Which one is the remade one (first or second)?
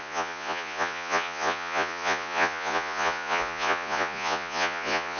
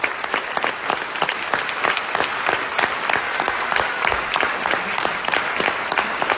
first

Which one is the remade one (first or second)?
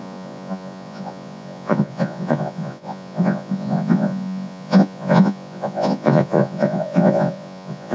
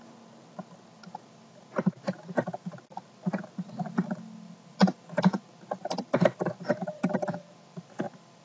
first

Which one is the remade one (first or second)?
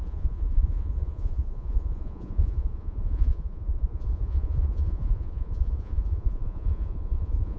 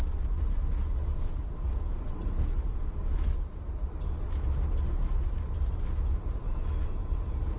first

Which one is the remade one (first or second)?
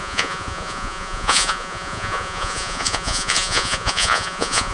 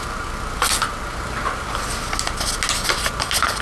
first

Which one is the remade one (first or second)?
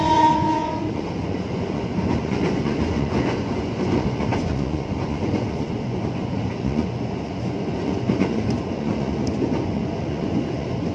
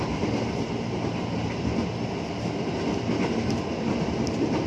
first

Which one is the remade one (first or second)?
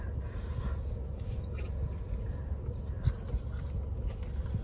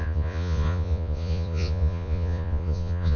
second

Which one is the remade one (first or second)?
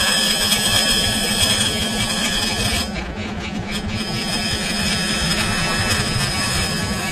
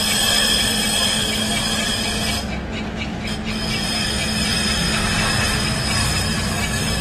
first